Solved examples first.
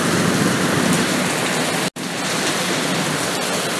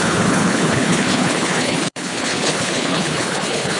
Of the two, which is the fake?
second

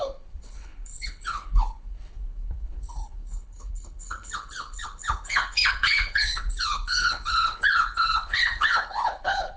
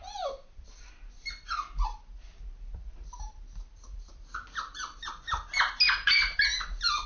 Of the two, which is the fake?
first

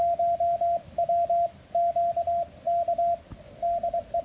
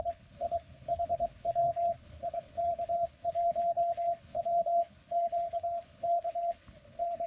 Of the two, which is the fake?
second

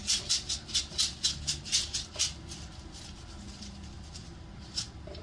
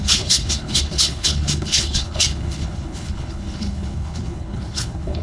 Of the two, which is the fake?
second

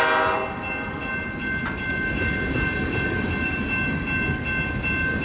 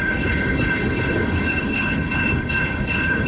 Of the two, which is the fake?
second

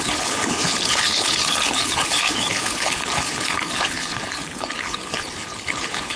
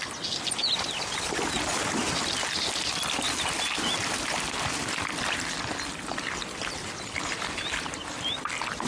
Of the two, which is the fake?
first